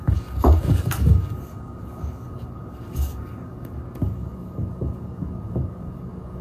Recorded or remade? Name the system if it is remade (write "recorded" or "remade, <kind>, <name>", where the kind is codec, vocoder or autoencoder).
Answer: remade, codec, DAC